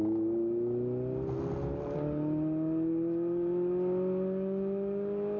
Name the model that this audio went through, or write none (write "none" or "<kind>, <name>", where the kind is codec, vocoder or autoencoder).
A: none